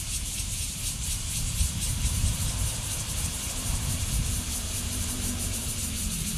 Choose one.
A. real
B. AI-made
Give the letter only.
B